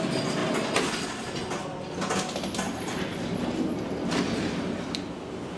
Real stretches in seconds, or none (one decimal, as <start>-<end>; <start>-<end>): 0.0-5.6